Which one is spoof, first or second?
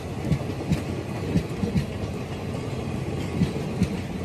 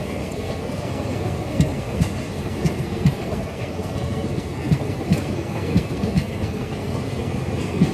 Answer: second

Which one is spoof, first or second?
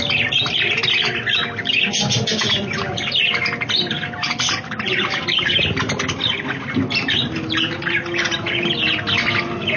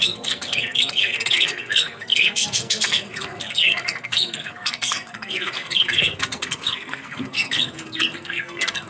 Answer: second